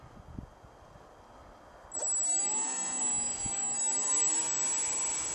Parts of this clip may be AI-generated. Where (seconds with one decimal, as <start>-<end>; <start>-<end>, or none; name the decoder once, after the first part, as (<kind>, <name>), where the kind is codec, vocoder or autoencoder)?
2.3-4.4 (autoencoder, DAC-VAE)